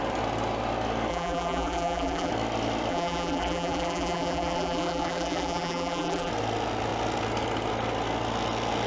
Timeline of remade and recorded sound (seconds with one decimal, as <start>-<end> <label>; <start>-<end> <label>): 0.0-1.1 recorded; 1.1-2.3 remade; 2.3-2.9 recorded; 2.9-6.3 remade; 6.3-8.9 recorded